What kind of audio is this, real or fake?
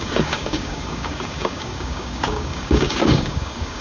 fake